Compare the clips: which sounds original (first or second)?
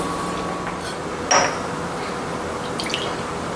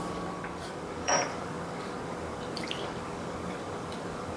first